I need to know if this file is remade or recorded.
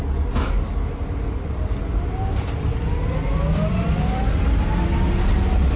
recorded